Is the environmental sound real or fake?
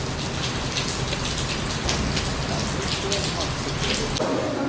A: real